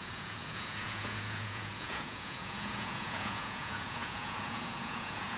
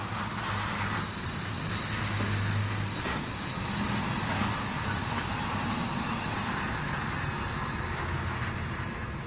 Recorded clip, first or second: second